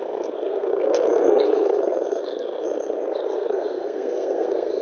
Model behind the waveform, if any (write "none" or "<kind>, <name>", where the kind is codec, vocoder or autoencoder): codec, SNAC